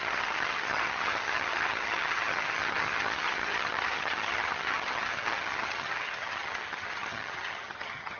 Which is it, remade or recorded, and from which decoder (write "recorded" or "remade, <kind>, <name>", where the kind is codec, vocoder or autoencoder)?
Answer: remade, vocoder, HiFi-GAN